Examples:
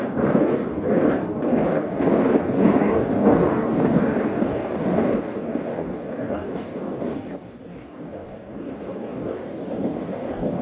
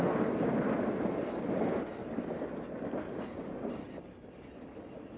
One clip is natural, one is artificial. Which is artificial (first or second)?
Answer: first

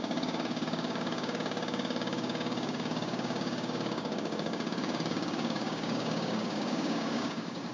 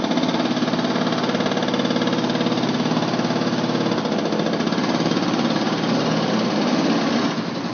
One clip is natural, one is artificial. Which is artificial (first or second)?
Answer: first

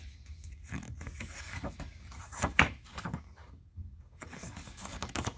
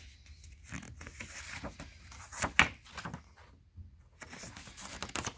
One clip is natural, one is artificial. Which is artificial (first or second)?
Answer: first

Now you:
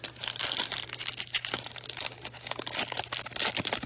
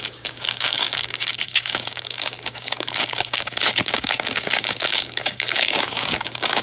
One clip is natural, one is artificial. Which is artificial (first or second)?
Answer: second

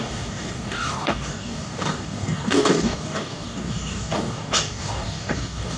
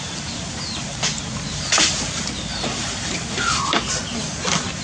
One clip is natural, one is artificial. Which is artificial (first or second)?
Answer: first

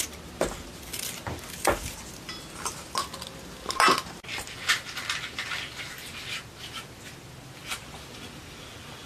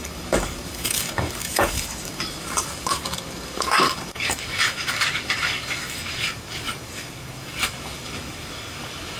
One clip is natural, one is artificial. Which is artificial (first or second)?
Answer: second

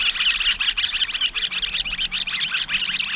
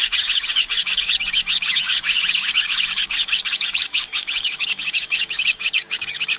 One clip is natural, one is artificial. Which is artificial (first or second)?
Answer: second